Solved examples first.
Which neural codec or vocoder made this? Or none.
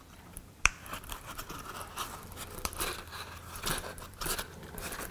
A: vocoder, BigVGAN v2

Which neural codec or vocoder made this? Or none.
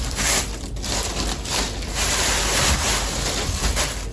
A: vocoder, BigVGAN v2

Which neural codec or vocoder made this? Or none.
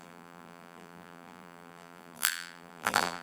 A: vocoder, BigVGAN v2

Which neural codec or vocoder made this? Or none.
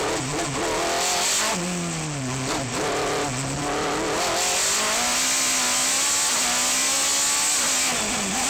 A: none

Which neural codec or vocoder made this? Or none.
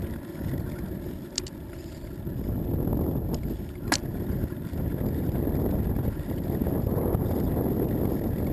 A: none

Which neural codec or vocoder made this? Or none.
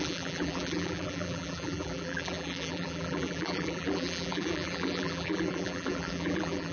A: vocoder, BigVGAN v2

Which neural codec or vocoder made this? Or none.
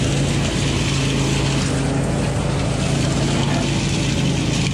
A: none